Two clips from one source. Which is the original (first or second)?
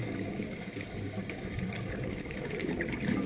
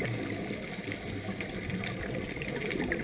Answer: second